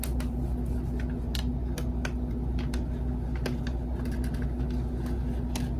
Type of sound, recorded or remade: recorded